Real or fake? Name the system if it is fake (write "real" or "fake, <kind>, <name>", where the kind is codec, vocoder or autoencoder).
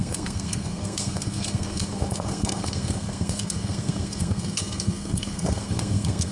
fake, codec, SNAC